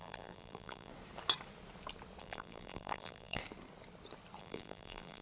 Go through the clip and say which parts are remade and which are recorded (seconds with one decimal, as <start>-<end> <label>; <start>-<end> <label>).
0.0-0.9 remade; 0.9-2.2 recorded; 2.2-3.4 remade; 3.4-4.4 recorded; 4.4-5.2 remade